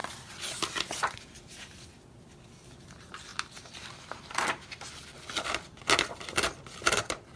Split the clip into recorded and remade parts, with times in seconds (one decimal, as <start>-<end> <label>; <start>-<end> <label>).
0.0-7.4 recorded